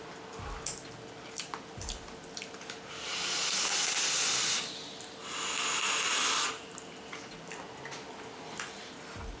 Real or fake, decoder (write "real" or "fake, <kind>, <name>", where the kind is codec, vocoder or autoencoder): real